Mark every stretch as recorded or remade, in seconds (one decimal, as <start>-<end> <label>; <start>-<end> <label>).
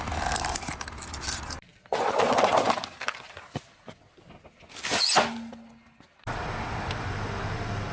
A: 0.0-7.9 recorded